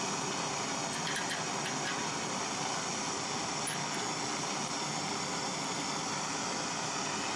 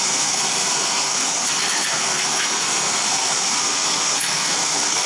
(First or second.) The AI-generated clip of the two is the second